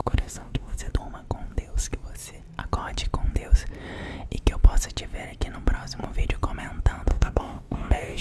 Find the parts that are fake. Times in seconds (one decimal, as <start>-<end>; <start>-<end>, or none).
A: 0.0-0.9; 7.1-8.2